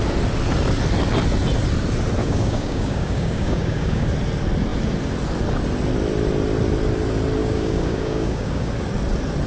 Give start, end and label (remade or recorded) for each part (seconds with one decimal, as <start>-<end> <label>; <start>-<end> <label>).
0.0-2.2 recorded; 2.2-4.1 remade; 4.1-7.4 recorded; 7.4-8.7 remade; 8.7-9.5 recorded